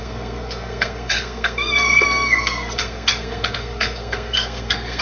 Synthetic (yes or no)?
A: yes